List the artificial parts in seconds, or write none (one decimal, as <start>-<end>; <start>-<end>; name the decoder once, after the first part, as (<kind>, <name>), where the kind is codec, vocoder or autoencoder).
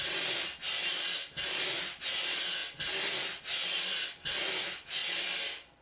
none